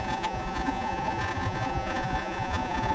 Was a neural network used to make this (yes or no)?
yes